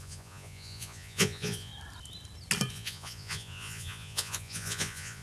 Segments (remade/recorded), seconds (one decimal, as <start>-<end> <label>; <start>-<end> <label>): 0.0-1.7 remade; 1.7-2.7 recorded; 2.7-5.2 remade